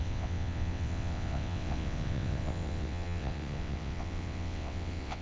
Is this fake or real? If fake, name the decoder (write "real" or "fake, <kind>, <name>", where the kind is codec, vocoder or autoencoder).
fake, vocoder, WaveNeXt